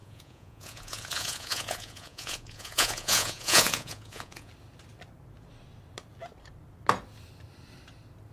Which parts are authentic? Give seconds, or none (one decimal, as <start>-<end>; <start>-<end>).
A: 4.5-8.3

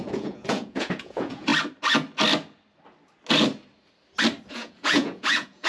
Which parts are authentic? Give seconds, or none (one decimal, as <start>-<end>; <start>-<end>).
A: 1.5-4.5

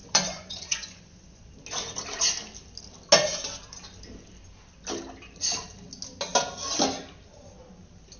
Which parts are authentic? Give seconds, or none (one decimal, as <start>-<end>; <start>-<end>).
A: 1.5-8.2